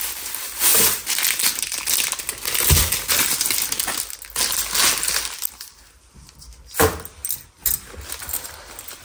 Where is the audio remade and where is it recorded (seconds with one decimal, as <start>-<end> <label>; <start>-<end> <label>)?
0.0-9.0 recorded